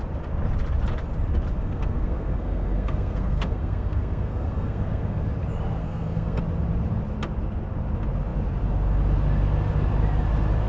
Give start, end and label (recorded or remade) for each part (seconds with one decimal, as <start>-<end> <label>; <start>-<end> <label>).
0.0-1.5 recorded; 1.5-5.2 remade; 5.2-5.8 recorded; 5.8-6.4 remade; 6.4-10.7 recorded

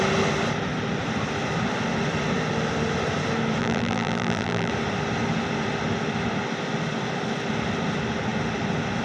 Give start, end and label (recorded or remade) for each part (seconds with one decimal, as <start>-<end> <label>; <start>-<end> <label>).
0.0-3.6 recorded; 3.6-4.7 remade; 4.7-9.0 recorded

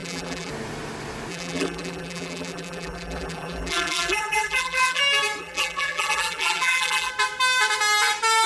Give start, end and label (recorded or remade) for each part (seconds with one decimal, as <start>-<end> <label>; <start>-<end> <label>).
0.0-0.5 remade; 0.5-1.3 recorded; 1.3-5.0 remade; 5.0-5.4 recorded; 5.4-7.1 remade; 7.1-8.5 recorded

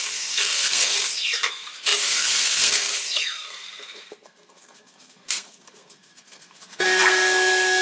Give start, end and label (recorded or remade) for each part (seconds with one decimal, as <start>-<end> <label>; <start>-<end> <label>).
0.0-7.8 remade